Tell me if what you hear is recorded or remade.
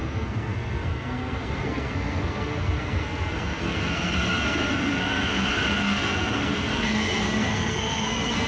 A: remade